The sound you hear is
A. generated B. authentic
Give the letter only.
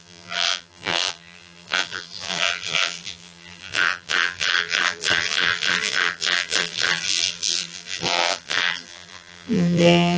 A